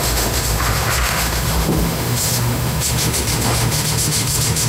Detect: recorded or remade remade